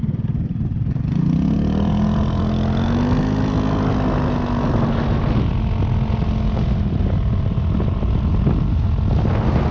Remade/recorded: recorded